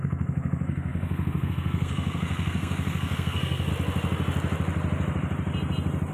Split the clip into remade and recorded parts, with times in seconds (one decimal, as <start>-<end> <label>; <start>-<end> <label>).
0.0-3.7 remade; 3.7-6.1 recorded